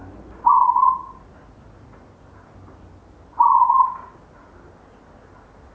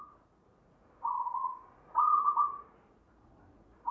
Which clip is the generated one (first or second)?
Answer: second